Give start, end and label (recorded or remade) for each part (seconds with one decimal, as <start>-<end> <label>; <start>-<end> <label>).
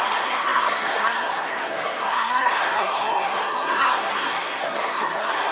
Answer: 0.0-5.5 remade